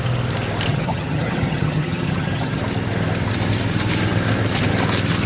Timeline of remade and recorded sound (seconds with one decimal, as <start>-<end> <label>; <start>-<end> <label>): 0.0-0.7 recorded; 0.7-2.6 remade; 2.6-5.3 recorded